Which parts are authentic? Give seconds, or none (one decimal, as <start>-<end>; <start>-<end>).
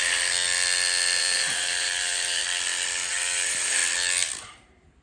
0.0-1.2; 2.4-3.1; 3.8-4.4